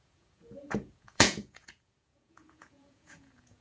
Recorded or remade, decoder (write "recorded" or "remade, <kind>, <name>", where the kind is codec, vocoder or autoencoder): remade, vocoder, Vocos